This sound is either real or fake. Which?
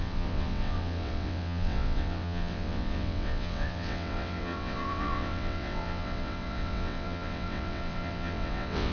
fake